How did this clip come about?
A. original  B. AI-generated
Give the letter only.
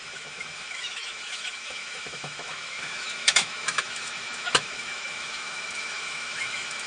B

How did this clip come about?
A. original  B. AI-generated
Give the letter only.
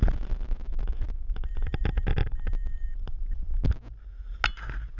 A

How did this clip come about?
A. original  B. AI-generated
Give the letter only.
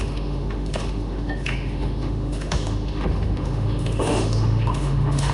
B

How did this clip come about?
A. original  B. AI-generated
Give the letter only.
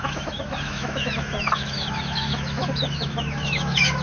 B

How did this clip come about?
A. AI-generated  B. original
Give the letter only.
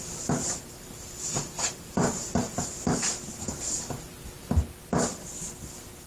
B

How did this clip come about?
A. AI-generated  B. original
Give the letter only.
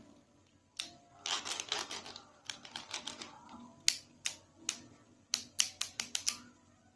B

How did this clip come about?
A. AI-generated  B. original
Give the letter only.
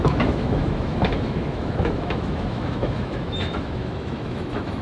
A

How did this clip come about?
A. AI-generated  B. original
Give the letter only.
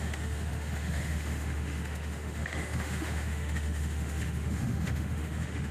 A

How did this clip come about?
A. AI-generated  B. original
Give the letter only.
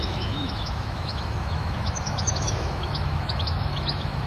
A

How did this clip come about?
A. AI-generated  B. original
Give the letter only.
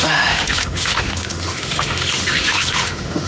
A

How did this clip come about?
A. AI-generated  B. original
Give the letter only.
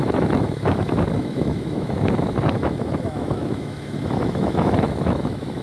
A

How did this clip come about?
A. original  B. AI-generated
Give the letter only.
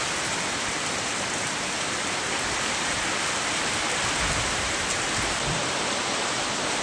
A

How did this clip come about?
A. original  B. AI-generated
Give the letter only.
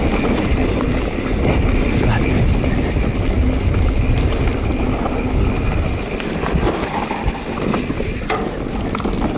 A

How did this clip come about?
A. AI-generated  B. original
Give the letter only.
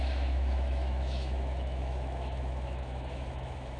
A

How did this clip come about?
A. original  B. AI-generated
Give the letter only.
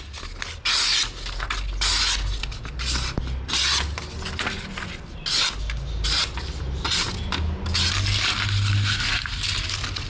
A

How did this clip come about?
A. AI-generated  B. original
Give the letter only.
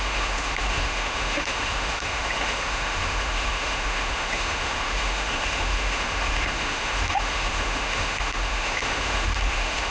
A